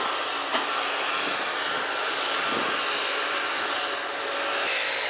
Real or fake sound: real